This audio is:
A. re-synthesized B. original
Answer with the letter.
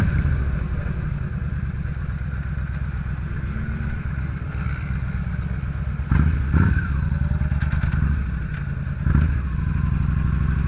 B